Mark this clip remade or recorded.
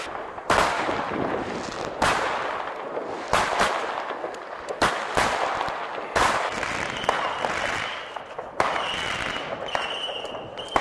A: recorded